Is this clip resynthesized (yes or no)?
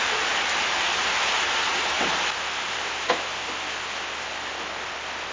no